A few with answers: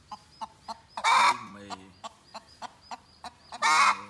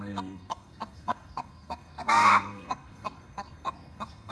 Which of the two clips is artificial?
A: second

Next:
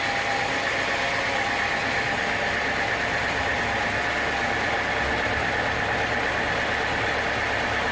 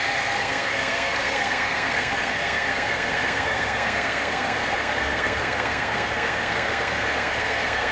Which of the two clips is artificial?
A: second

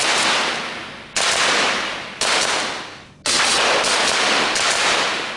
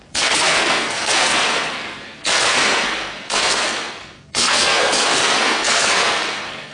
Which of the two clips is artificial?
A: second